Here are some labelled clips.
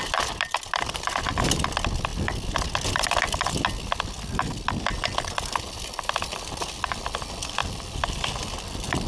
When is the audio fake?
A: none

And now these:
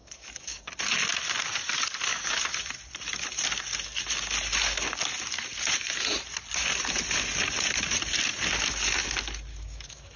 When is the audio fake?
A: 0.0-0.7 (codec, DAC); 2.1-2.6; 9.5-10.2

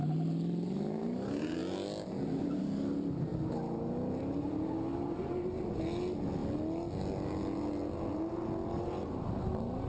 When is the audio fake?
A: none

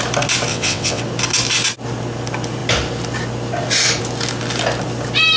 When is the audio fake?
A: 0.5-1.0 (vocoder, WaveNeXt)

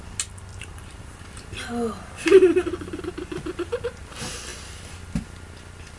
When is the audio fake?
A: 0.5-3.0 (vocoder, BigVGAN v2)